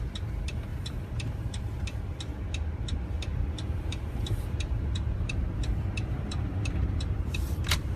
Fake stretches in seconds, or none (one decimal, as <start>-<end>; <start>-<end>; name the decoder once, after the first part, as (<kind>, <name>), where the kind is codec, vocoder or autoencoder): 0.7-1.6 (vocoder, BigVGAN v2); 3.3-8.0